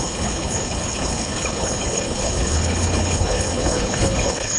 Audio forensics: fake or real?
fake